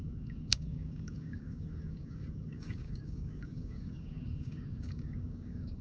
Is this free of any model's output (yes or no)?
no